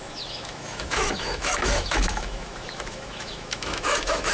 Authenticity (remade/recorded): remade